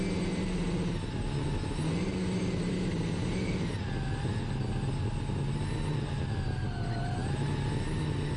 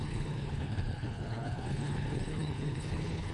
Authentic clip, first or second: first